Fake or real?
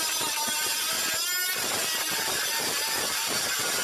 real